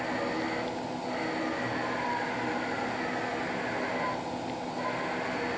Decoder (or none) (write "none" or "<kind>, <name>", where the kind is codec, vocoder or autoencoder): none